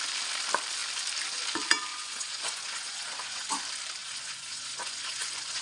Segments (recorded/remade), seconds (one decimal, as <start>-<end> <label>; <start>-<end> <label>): 0.0-1.9 recorded; 1.9-3.6 remade; 3.6-4.0 recorded; 4.0-5.6 remade